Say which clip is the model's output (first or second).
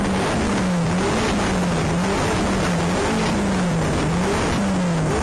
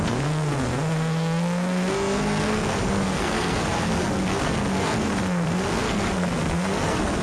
second